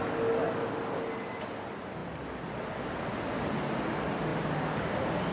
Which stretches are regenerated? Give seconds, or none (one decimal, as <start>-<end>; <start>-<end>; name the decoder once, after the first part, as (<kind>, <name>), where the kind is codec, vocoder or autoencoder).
none